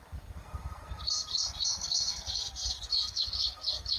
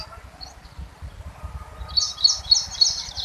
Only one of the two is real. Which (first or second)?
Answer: second